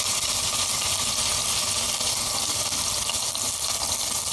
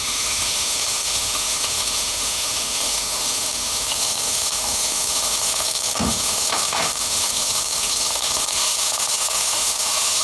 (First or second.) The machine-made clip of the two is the second